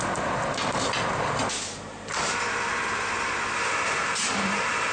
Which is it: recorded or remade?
remade